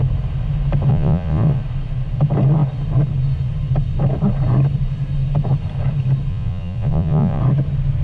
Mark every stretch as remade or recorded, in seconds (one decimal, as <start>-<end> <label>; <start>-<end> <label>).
0.0-0.9 recorded; 0.9-1.6 remade; 1.6-6.3 recorded; 6.3-7.4 remade; 7.4-8.0 recorded